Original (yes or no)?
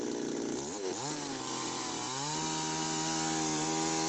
yes